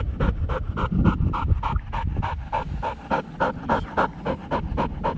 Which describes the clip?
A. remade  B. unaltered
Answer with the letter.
B